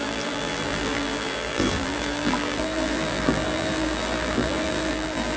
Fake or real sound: fake